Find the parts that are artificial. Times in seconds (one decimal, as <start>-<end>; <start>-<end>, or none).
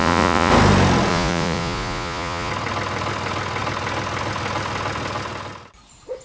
0.0-0.5; 1.1-2.5